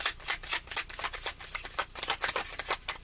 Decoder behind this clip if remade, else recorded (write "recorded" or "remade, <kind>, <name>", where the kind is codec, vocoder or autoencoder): recorded